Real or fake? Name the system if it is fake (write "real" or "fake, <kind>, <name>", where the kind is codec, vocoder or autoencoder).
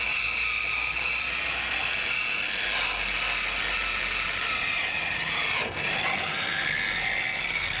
real